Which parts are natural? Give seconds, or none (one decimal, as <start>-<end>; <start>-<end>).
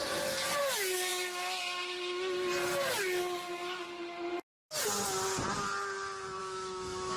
0.0-6.4